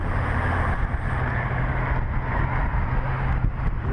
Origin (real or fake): real